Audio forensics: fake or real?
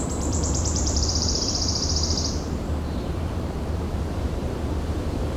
fake